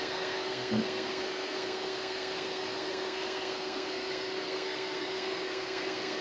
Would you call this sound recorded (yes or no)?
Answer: no